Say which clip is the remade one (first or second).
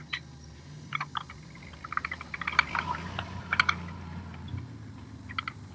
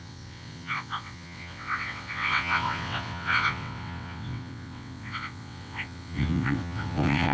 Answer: second